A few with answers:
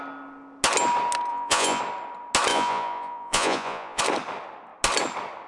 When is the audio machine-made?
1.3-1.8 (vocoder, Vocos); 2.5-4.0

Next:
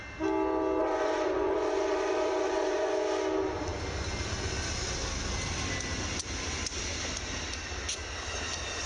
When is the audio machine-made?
0.8-2.9 (vocoder, Vocos)

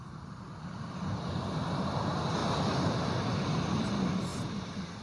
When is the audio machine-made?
0.0-2.4 (vocoder, BigVGAN v2); 3.7-4.3

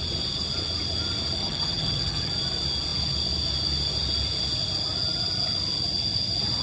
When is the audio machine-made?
1.4-2.3 (vocoder, HiFi-GAN)

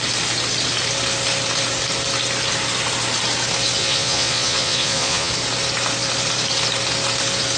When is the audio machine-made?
3.8-5.3 (vocoder, Vocos)